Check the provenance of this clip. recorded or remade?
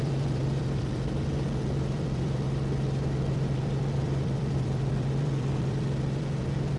remade